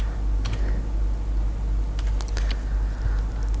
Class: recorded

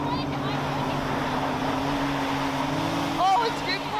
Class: recorded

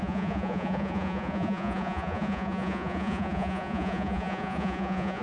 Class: remade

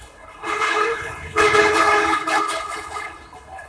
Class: remade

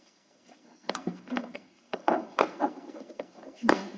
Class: remade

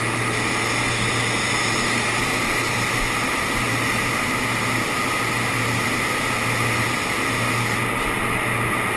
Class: recorded